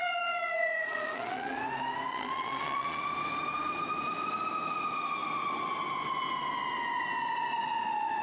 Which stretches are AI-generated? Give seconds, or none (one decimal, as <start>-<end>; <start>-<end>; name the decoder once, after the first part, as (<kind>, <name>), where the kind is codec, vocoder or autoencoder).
0.0-1.6 (vocoder, Vocos); 2.1-3.0